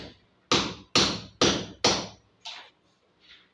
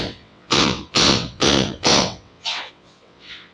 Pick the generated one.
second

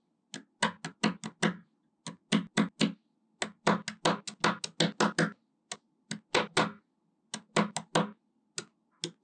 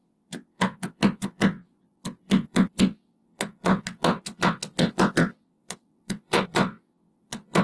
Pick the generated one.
second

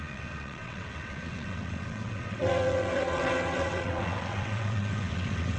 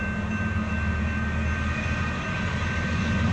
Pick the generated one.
first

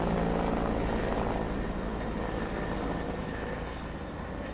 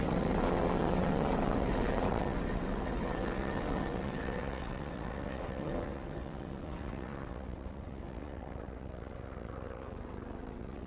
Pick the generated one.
second